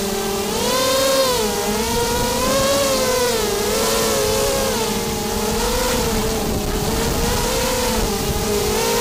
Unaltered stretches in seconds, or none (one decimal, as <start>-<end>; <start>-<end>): 0.0-9.0